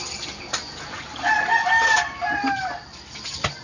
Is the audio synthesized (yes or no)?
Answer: no